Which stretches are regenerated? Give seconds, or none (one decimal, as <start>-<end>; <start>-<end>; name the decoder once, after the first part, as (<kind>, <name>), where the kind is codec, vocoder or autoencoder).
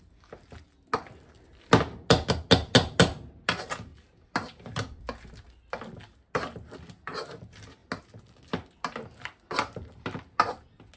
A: none